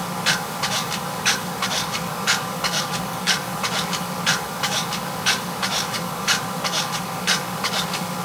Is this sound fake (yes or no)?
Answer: yes